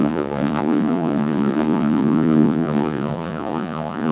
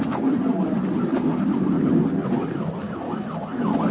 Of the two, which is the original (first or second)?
second